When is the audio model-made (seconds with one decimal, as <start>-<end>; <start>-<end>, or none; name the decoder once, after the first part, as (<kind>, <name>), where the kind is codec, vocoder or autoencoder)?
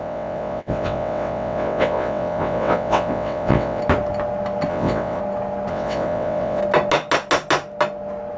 0.0-3.8 (vocoder, WaveNeXt); 4.7-5.2; 5.7-6.6